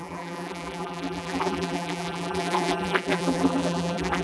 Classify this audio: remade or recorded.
remade